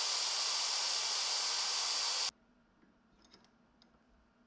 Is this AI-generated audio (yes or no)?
no